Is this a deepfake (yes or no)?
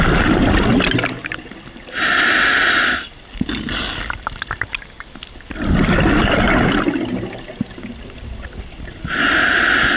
no